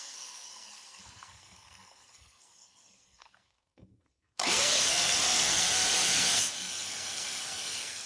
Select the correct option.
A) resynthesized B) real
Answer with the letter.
A